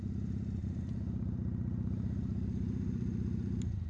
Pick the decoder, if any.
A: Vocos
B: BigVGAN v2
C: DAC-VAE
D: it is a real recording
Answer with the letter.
B